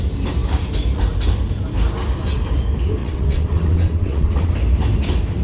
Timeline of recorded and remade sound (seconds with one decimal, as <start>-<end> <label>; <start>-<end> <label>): 0.0-3.0 recorded; 3.0-4.5 remade; 4.5-5.4 recorded